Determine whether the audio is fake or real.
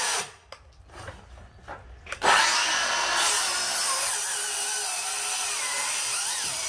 real